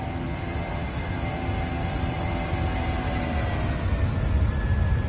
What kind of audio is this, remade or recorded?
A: recorded